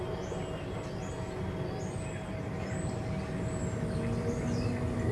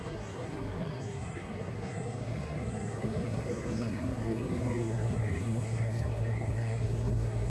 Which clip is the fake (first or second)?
second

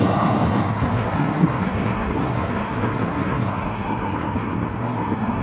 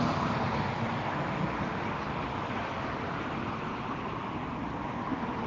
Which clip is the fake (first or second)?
first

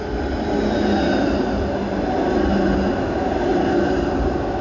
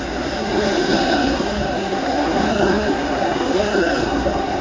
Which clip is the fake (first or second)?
second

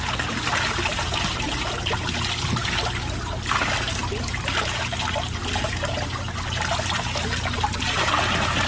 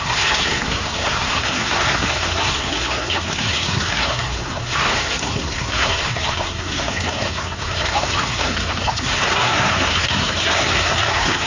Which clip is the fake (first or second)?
second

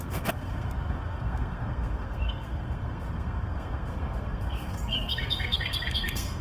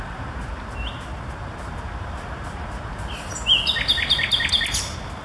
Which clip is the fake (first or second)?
first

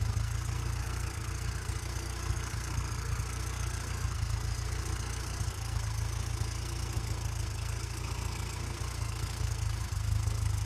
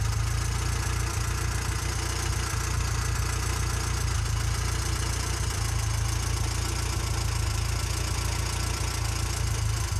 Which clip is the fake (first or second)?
first